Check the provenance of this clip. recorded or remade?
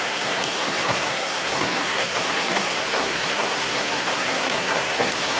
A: remade